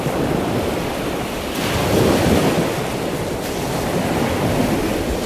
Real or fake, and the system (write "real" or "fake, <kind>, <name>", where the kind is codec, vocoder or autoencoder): real